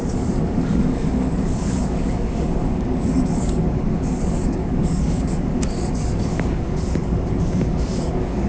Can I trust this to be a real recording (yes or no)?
no